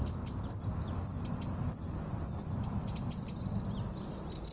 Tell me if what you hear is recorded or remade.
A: recorded